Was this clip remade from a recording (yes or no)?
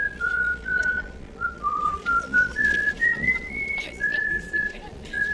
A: yes